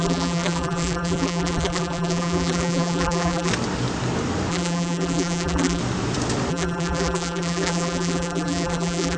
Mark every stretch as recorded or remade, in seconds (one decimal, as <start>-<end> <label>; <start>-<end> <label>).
0.0-3.5 remade; 3.5-4.5 recorded; 4.5-5.8 remade; 5.8-6.5 recorded; 6.5-9.2 remade